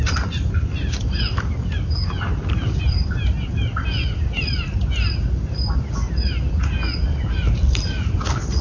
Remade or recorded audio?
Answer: remade